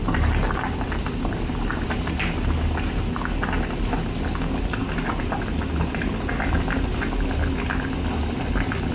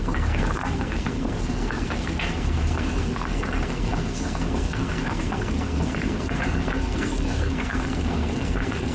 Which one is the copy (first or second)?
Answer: second